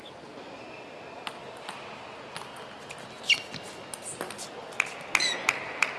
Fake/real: real